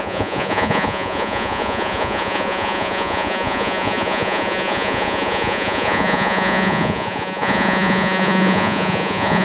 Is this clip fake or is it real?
fake